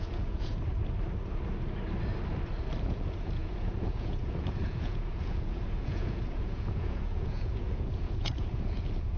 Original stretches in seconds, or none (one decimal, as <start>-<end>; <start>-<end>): 0.5-2.8